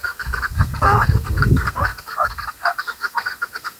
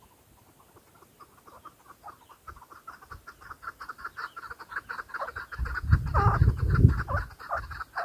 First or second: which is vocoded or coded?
first